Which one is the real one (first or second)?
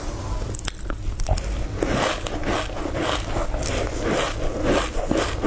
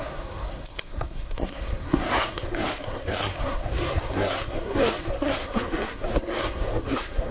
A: first